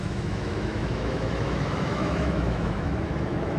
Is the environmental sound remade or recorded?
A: remade